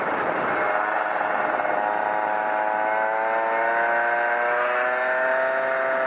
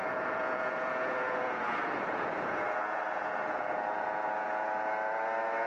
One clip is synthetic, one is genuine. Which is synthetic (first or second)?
second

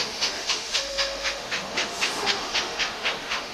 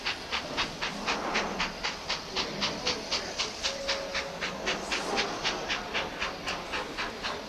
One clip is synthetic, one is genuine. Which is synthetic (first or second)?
first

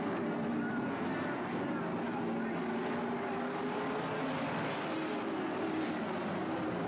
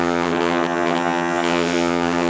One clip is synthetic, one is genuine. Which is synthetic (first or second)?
second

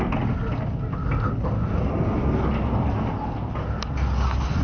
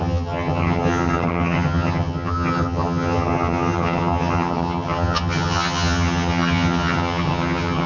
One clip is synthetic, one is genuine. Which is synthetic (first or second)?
second